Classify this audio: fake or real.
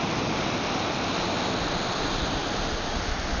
real